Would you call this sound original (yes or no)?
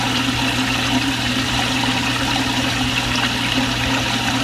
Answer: yes